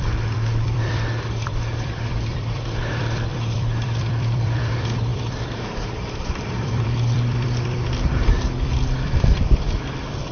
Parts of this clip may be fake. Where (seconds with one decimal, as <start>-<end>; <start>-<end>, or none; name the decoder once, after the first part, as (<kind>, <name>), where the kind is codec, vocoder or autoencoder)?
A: 0.0-10.3 (vocoder, BigVGAN v2)